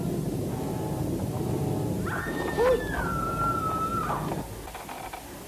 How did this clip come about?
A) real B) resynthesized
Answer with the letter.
A